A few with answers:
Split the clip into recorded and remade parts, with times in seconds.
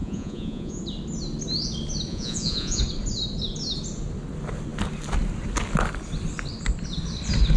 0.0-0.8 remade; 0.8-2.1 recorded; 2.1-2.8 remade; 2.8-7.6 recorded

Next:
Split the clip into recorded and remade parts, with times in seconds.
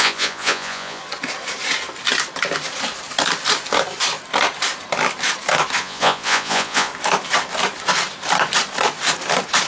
0.0-1.0 remade; 1.0-5.8 recorded; 5.8-6.9 remade; 6.9-9.7 recorded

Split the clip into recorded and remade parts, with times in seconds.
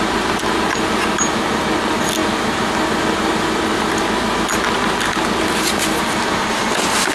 0.0-7.1 recorded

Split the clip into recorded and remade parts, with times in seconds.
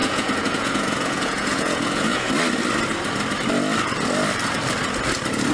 0.0-2.3 remade; 2.3-5.5 recorded